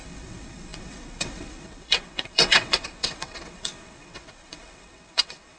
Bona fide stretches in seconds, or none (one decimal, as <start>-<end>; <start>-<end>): none